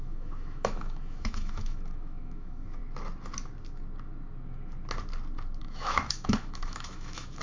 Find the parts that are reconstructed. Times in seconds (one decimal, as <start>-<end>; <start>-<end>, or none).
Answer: 0.0-2.8; 5.6-7.4